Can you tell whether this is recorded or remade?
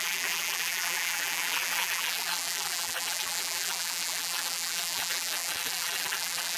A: remade